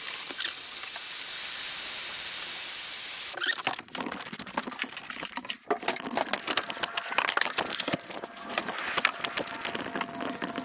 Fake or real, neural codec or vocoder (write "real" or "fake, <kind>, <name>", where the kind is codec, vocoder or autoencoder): real